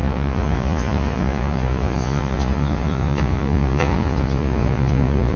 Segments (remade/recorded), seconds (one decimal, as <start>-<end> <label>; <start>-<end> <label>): 0.0-5.4 remade